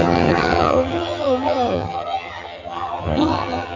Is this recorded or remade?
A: remade